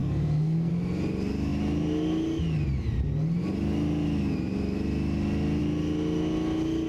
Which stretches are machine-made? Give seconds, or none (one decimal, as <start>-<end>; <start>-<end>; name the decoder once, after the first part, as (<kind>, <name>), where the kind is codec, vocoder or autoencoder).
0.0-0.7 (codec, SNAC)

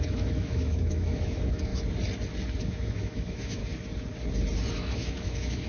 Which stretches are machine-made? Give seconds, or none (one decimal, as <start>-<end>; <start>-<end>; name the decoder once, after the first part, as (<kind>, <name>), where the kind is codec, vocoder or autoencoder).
0.0-1.7 (autoencoder, DAC-VAE); 2.6-3.6; 4.7-5.7

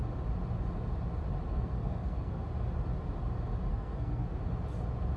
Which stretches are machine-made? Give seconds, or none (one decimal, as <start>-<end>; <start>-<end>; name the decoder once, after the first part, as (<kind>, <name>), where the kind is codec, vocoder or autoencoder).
1.5-2.4 (codec, SNAC); 3.7-4.4

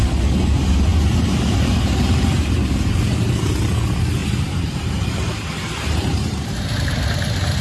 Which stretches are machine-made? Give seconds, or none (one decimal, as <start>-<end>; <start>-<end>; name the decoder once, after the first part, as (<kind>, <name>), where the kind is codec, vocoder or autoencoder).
0.9-3.5 (vocoder, BigVGAN v2); 4.2-6.4

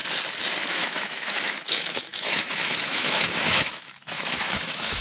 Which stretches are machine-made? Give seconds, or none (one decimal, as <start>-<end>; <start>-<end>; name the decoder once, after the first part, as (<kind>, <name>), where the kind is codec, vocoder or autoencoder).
0.7-5.0 (autoencoder, DAC-VAE)

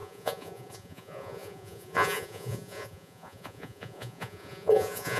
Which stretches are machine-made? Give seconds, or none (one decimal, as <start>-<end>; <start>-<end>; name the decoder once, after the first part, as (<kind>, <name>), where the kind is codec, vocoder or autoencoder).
0.0-5.2 (vocoder, Vocos)

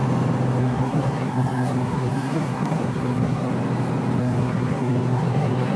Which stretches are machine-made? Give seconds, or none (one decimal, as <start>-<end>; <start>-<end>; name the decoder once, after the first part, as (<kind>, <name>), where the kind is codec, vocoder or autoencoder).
0.6-3.5 (codec, SNAC); 4.2-5.8